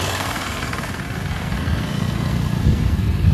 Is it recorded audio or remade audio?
remade